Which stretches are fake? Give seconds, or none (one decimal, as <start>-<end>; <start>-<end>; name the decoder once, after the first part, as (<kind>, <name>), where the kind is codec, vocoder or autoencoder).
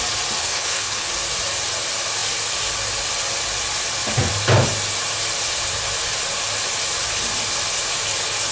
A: 0.4-1.1 (codec, HILCodec)